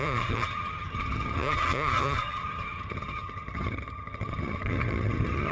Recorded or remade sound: remade